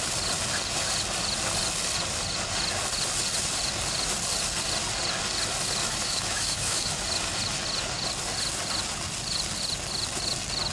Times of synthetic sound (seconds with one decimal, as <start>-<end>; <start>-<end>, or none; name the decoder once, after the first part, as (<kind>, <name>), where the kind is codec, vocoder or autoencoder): 5.8-6.9 (autoencoder, DAC-VAE)